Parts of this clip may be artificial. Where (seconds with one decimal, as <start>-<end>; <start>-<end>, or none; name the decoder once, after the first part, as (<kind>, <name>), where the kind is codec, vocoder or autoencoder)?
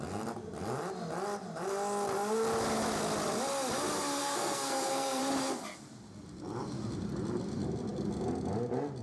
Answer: 4.2-5.2 (codec, SNAC)